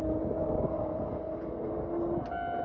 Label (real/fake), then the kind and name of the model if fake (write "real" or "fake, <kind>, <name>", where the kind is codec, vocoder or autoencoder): real